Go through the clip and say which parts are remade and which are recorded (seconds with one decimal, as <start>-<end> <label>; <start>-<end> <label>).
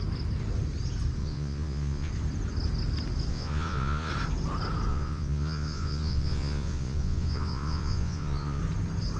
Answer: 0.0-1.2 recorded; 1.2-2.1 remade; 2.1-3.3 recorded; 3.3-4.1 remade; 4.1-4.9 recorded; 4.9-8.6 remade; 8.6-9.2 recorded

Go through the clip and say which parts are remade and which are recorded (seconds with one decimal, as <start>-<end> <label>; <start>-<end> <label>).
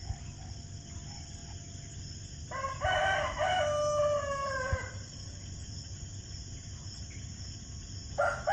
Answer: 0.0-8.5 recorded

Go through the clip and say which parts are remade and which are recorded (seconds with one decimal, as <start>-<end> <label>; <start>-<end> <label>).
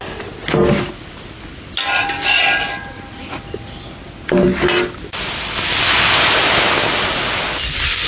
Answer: 0.0-8.1 recorded